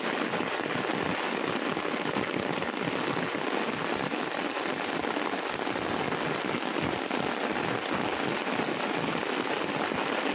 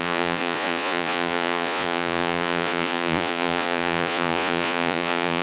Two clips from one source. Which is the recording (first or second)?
first